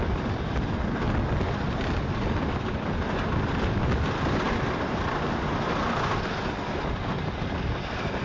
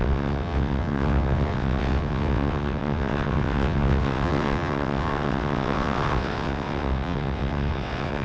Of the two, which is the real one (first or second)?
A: first